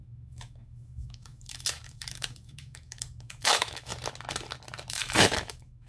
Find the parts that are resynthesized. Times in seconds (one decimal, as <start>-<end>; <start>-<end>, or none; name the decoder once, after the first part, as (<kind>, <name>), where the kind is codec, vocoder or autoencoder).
0.0-3.9 (autoencoder, DAC-VAE); 4.9-5.9